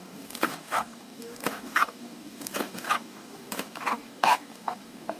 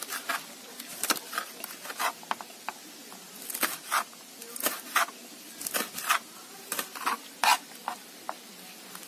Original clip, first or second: second